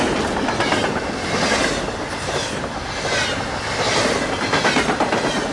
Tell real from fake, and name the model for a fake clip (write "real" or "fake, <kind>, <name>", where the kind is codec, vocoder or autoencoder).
real